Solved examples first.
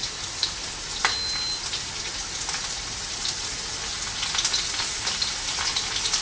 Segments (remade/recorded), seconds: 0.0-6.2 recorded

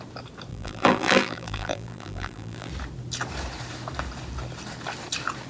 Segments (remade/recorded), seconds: 0.0-0.5 recorded; 0.5-2.7 remade; 2.7-5.5 recorded

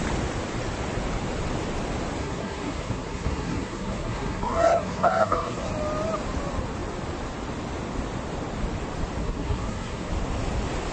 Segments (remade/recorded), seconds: 0.0-2.2 recorded; 2.2-5.7 remade; 5.7-9.2 recorded; 9.2-10.1 remade; 10.1-10.9 recorded

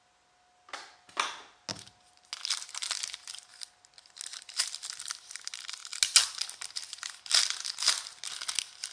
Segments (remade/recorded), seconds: 0.0-8.9 recorded